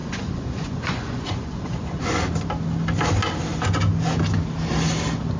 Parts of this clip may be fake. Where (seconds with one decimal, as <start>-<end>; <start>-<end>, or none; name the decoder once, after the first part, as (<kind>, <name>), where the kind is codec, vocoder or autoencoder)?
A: 0.0-2.0 (vocoder, Vocos)